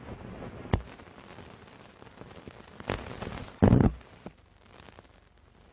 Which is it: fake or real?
real